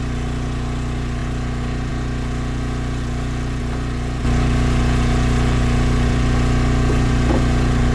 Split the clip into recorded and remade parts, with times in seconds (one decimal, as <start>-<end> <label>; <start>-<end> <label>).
0.0-7.9 recorded